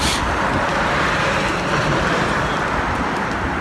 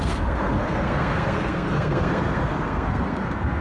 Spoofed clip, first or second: second